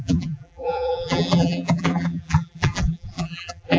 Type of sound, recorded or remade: remade